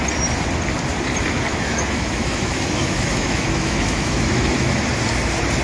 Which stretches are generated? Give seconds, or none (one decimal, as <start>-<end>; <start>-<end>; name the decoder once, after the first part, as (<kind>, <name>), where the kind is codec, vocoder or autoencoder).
1.5-4.8 (autoencoder, DAC-VAE)